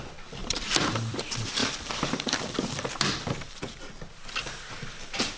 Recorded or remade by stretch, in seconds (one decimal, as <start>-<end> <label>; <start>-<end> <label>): 0.0-0.4 recorded; 0.4-1.2 remade; 1.2-1.6 recorded; 1.6-3.5 remade; 3.5-5.4 recorded